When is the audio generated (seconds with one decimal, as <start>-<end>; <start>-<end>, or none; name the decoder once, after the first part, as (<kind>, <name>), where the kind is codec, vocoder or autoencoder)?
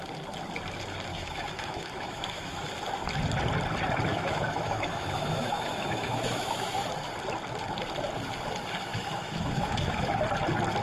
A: 1.1-2.7 (autoencoder, DAC-VAE); 4.1-6.8; 8.9-10.2